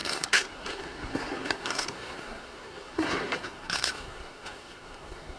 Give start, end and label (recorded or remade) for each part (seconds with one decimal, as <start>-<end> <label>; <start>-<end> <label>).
0.0-5.4 remade